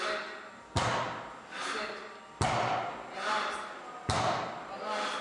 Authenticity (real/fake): real